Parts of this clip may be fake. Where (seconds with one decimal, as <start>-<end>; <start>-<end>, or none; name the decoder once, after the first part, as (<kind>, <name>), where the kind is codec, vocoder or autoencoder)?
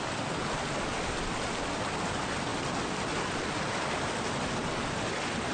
none